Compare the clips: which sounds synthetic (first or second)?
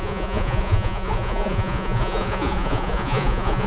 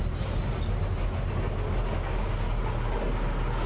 first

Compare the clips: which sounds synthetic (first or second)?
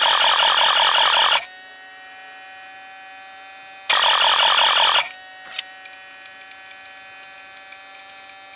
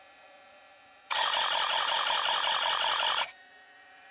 second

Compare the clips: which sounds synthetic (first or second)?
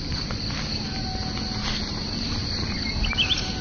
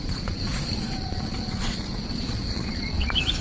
second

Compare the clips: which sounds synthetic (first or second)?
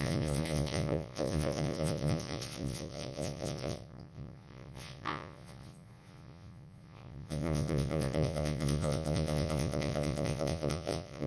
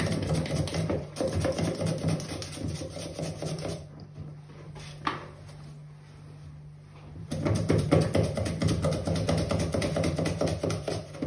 first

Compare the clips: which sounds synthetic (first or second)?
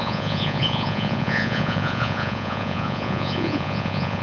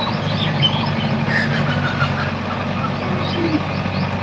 first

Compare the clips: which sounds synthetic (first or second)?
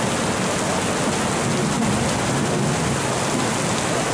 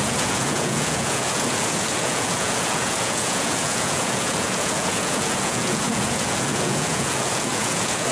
second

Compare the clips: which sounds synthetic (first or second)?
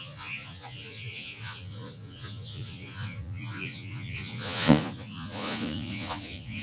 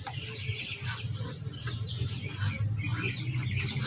first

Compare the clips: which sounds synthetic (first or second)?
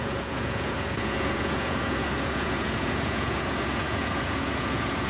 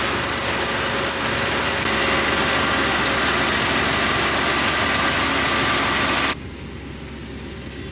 first